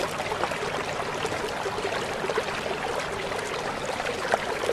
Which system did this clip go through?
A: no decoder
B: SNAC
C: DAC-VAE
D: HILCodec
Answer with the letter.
A